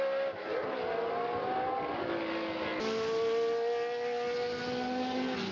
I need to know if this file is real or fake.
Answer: real